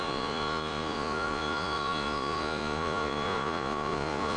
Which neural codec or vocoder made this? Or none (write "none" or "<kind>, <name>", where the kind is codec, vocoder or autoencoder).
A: vocoder, Vocos